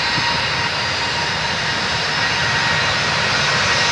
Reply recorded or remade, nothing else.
recorded